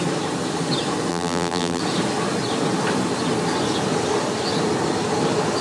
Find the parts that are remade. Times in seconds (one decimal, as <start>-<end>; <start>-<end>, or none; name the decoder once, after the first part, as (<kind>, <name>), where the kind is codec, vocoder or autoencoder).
1.1-1.8 (vocoder, BigVGAN v2)